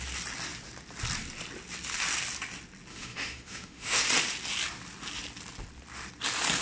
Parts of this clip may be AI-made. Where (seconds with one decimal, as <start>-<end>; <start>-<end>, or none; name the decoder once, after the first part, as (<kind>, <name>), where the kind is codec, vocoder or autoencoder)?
2.9-4.0 (autoencoder, DAC-VAE)